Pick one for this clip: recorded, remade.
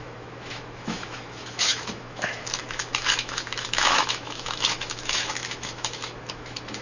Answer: remade